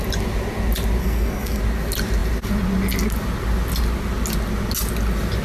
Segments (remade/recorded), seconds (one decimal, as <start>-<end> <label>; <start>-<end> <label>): 0.0-1.0 recorded; 1.0-1.6 remade; 1.6-5.4 recorded